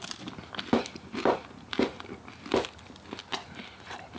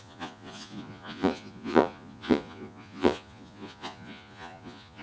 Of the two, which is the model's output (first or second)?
second